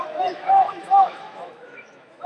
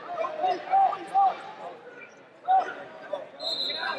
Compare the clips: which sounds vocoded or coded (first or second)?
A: first